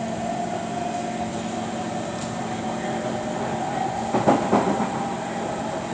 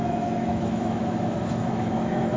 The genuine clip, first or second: first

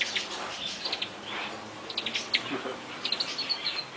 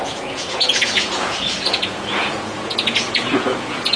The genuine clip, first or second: first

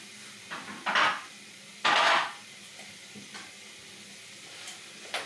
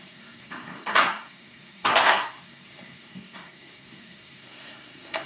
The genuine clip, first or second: first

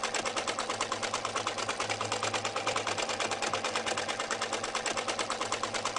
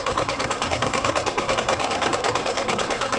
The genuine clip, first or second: first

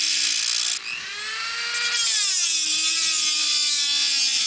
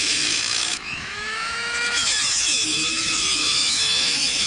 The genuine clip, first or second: first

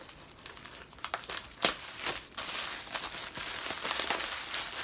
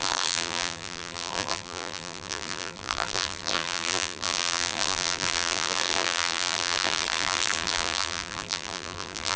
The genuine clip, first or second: first